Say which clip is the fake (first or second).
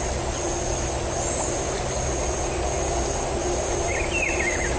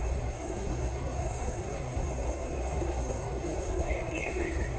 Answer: second